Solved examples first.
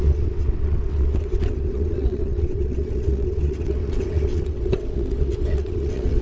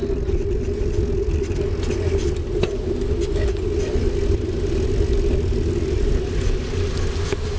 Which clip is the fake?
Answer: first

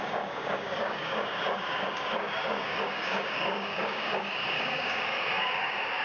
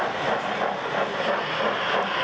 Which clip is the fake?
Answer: first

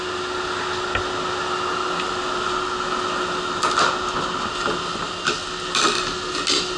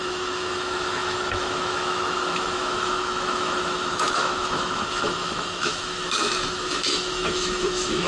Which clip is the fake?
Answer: second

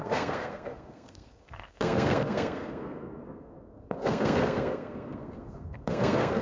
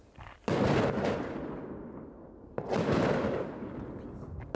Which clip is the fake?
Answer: first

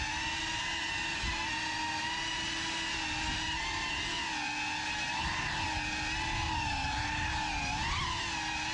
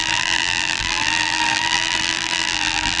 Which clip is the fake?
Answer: second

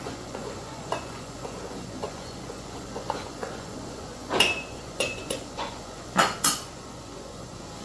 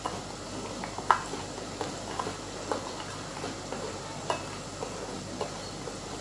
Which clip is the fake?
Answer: first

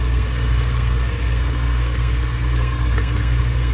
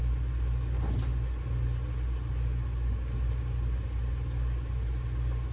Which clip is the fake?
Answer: first